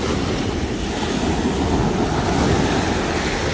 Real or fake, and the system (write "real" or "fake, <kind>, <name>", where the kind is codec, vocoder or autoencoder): real